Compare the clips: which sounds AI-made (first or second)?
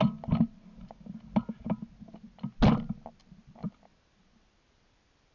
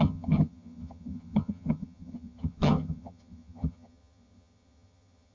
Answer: second